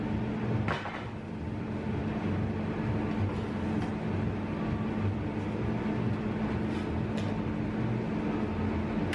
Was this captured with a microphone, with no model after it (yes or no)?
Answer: yes